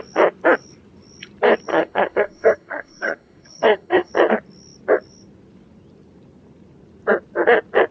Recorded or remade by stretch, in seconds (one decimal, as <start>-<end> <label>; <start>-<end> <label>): 0.0-1.7 recorded; 1.7-4.1 remade; 4.1-7.9 recorded